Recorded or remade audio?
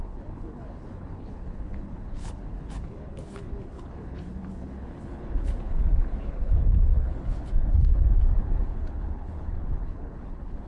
remade